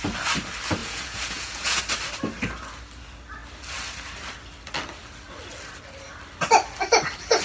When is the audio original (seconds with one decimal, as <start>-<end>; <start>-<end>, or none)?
0.0-0.8; 1.8-7.4